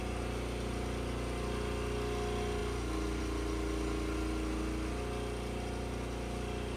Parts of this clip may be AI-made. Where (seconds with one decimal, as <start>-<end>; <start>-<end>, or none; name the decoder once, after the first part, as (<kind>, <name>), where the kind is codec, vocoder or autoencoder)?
none